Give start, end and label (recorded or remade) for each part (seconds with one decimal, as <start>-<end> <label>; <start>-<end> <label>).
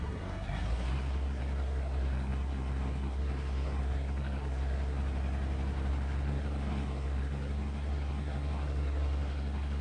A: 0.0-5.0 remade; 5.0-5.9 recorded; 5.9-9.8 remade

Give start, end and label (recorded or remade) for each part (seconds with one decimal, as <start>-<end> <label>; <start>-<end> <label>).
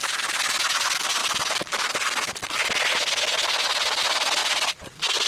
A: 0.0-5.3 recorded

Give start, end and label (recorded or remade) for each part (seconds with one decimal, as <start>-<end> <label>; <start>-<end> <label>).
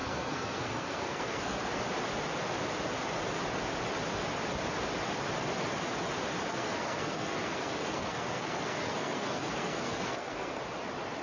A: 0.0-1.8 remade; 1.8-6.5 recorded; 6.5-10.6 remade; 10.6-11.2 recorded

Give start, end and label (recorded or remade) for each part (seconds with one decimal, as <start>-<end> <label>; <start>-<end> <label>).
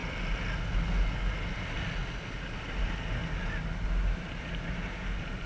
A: 0.0-5.5 recorded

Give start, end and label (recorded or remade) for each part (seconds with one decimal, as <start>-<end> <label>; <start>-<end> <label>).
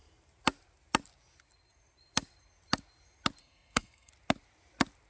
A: 0.0-3.4 recorded; 3.4-4.1 remade; 4.1-5.1 recorded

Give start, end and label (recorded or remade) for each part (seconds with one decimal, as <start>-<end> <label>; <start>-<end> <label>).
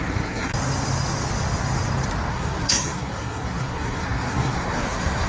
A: 0.0-0.5 remade; 0.5-2.3 recorded; 2.3-5.3 remade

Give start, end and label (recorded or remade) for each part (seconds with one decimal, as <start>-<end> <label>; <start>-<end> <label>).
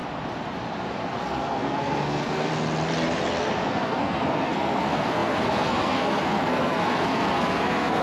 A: 0.0-1.1 recorded; 1.1-2.5 remade; 2.5-3.5 recorded; 3.5-8.0 remade